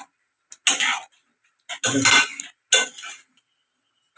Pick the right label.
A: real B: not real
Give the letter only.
A